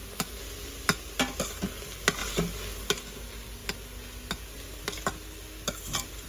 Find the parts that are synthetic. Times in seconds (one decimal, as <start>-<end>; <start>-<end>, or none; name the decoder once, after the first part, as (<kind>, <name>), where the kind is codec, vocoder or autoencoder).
none